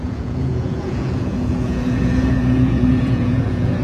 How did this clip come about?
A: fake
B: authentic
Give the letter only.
A